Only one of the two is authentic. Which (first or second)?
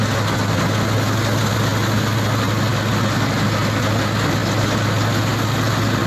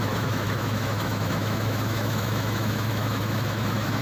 first